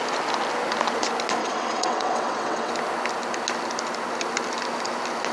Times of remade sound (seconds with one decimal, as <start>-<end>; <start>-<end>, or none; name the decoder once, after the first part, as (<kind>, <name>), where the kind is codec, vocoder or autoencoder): 1.4-2.7 (vocoder, WaveNeXt)

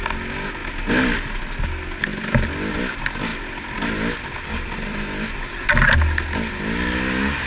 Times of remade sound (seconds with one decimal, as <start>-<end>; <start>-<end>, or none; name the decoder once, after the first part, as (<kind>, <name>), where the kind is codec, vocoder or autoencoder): none

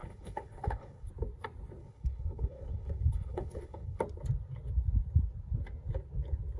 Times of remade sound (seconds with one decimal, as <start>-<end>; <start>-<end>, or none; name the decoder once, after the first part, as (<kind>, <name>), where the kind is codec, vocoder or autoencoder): 0.0-1.1 (codec, HILCodec); 1.8-4.0

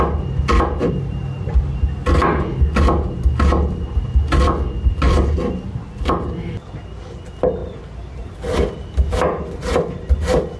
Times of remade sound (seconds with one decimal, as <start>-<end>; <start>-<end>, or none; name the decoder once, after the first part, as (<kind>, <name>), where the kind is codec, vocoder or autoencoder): none